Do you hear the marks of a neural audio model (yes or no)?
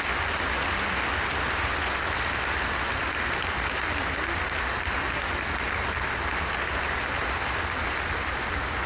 no